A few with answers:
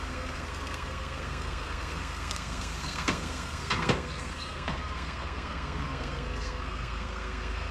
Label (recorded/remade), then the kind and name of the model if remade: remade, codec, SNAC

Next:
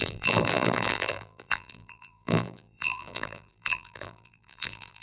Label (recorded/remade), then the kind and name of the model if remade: remade, vocoder, BigVGAN v2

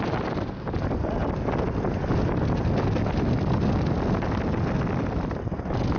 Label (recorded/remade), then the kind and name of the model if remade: recorded